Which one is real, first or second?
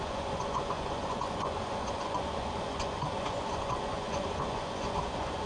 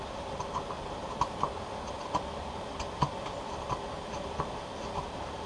second